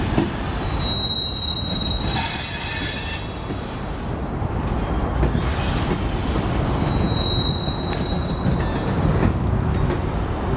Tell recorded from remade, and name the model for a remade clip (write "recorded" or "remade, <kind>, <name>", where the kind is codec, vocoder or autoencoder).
recorded